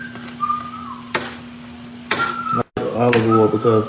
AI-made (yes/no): no